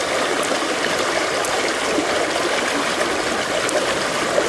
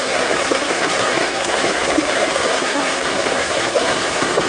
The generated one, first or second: second